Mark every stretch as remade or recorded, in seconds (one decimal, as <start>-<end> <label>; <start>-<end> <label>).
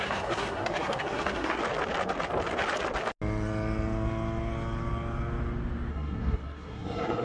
0.0-1.6 remade; 1.6-5.9 recorded; 5.9-7.2 remade